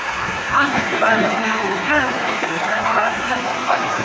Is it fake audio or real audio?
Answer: fake